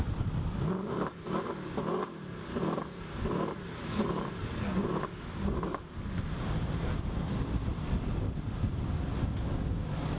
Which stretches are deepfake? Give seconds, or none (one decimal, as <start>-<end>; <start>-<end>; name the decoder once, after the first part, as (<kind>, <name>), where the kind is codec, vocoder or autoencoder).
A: none